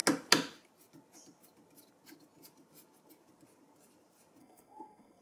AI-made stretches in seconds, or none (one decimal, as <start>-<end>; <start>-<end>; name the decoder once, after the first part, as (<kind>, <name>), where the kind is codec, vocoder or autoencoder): 4.4-5.2 (codec, SNAC)